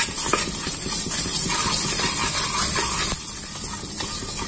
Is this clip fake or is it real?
real